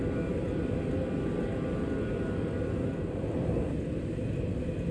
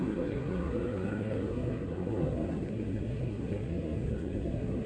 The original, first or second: first